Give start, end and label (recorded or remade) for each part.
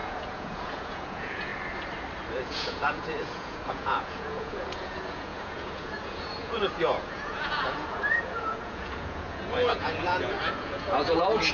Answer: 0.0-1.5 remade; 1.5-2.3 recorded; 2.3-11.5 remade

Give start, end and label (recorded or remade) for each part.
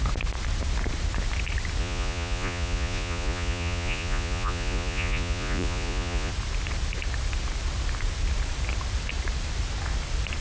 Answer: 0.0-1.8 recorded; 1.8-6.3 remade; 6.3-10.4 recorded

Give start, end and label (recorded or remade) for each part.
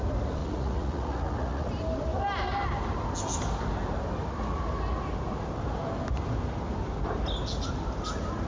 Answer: 0.0-0.4 recorded; 0.4-1.7 remade; 1.7-8.5 recorded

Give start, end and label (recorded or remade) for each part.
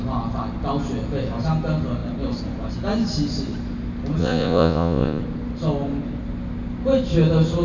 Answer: 0.0-4.2 recorded; 4.2-5.2 remade; 5.2-7.6 recorded